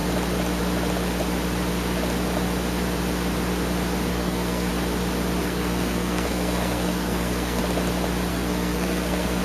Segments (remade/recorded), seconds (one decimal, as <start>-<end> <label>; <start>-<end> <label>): 0.0-4.1 recorded; 4.1-4.7 remade; 4.7-5.4 recorded; 5.4-7.6 remade; 7.6-8.3 recorded; 8.3-9.4 remade

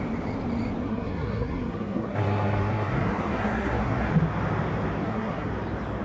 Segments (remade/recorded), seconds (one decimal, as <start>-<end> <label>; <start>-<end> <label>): 0.0-0.8 recorded; 0.8-4.1 remade; 4.1-5.0 recorded; 5.0-5.5 remade; 5.5-6.0 recorded

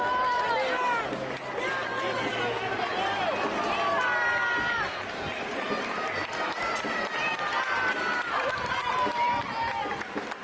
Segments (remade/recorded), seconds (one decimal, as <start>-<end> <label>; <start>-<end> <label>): 0.0-10.4 recorded

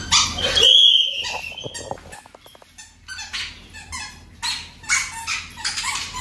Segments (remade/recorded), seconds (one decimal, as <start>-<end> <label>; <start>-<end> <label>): 0.0-6.2 recorded

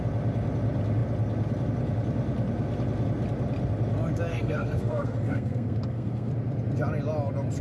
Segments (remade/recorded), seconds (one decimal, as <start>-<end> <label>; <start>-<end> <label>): 0.0-4.3 recorded; 4.3-6.3 remade; 6.3-7.6 recorded

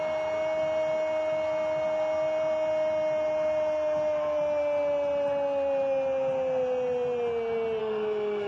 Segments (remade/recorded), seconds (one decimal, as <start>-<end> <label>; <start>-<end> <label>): 0.0-7.8 recorded; 7.8-8.5 remade

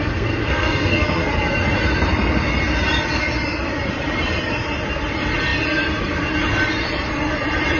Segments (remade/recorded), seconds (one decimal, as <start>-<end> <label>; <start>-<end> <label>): 0.0-1.3 remade; 1.3-7.8 recorded

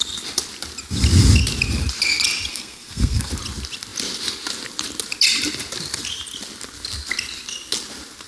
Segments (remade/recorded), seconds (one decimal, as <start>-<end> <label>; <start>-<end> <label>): 0.0-2.5 recorded; 2.5-3.3 remade; 3.3-8.3 recorded